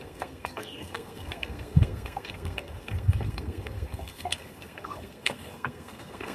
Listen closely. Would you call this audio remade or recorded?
remade